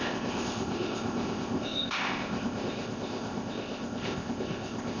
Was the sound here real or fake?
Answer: fake